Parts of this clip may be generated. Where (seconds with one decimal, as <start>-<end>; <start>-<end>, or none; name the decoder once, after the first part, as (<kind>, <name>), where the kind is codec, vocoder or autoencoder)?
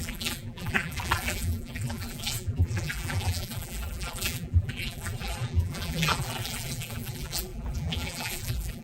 0.0-8.8 (vocoder, BigVGAN v2)